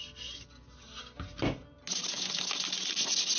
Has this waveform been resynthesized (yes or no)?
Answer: no